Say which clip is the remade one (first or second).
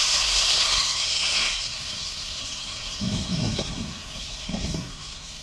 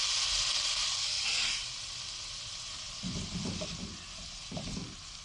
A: first